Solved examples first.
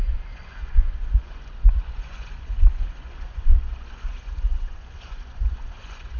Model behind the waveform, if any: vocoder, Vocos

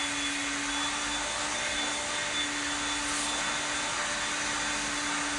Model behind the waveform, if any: none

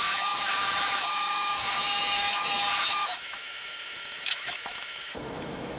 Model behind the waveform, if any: autoencoder, DAC-VAE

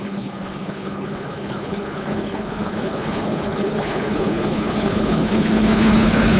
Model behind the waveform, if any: codec, HILCodec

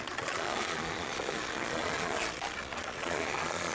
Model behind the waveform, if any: vocoder, Vocos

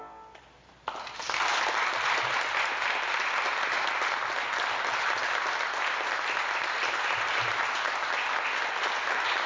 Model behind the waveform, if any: none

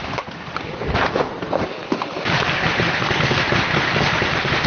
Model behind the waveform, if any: vocoder, BigVGAN v2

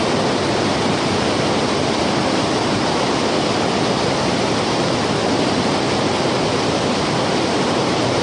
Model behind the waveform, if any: none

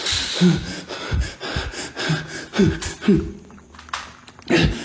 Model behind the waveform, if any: none